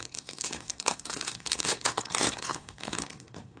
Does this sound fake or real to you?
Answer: fake